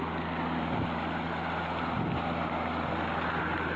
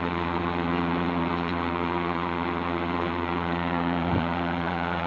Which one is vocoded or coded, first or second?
second